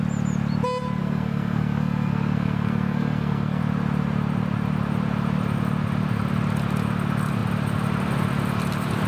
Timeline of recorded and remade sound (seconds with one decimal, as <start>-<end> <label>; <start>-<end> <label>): 0.0-1.0 recorded; 1.0-3.6 remade; 3.6-9.1 recorded